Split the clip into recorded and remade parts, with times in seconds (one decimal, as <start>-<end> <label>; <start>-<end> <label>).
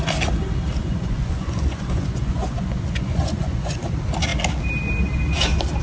0.0-0.8 recorded; 0.8-3.8 remade; 3.8-5.8 recorded